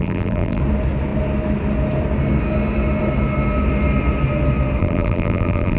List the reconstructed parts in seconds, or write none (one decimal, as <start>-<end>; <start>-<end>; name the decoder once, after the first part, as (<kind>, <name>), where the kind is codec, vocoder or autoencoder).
0.0-0.6 (vocoder, BigVGAN v2); 4.8-5.8